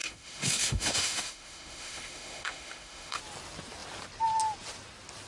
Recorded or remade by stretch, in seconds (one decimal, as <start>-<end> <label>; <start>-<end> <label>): 0.0-3.2 remade; 3.2-5.3 recorded